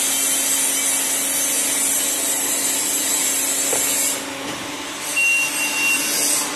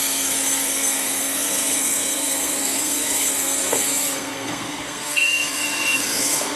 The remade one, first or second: second